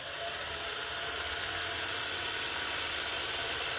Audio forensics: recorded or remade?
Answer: recorded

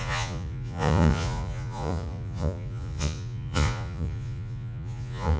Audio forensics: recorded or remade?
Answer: remade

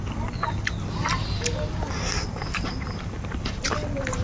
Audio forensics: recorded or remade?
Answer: recorded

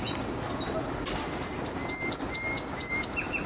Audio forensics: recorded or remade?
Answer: recorded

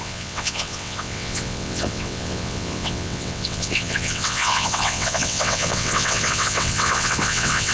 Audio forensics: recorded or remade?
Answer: remade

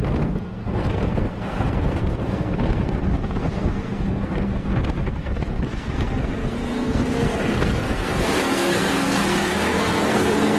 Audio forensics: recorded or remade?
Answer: remade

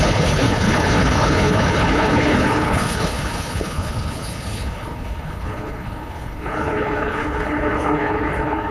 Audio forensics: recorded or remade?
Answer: remade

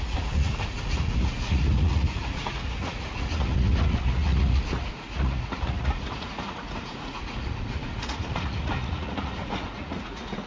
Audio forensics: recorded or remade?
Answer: remade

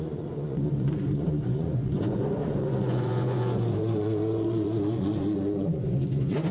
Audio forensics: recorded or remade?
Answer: remade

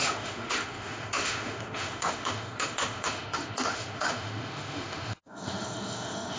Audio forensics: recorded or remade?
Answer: remade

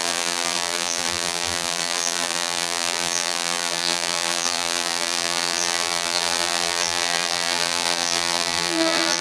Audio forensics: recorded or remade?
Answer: remade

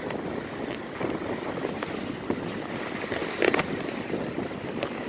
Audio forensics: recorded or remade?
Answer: recorded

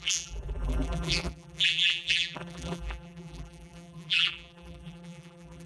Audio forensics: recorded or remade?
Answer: remade